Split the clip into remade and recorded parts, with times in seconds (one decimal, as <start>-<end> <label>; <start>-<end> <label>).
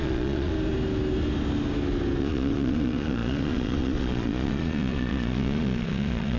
0.0-0.5 remade; 0.5-2.2 recorded; 2.2-6.4 remade